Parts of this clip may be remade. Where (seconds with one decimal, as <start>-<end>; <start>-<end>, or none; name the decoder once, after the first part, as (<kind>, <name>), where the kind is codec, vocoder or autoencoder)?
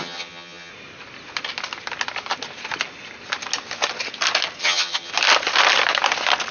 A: 0.0-0.7 (vocoder, HiFi-GAN); 4.6-5.1